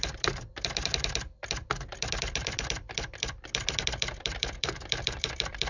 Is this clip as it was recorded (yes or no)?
no